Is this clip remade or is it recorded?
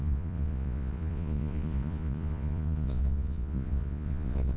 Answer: remade